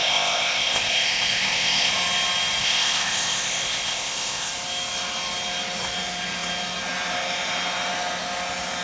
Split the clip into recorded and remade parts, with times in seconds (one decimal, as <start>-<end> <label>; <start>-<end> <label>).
0.0-1.9 remade; 1.9-2.6 recorded; 2.6-4.5 remade; 4.5-8.8 recorded